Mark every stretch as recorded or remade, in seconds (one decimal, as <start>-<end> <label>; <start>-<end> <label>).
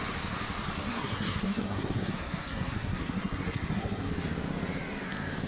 0.0-0.8 recorded; 0.8-4.1 remade; 4.1-5.5 recorded